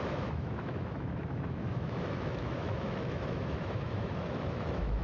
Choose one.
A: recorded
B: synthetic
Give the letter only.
B